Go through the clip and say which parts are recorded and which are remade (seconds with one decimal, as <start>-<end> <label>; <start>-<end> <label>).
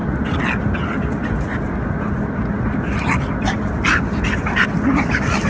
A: 0.0-5.5 recorded